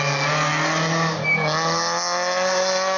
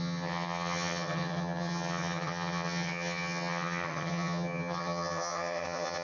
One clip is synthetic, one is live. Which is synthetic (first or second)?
second